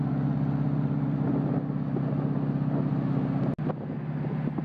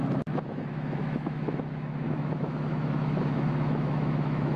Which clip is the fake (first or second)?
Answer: second